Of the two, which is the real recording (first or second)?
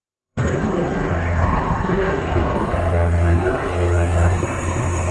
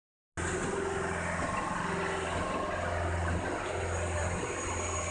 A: second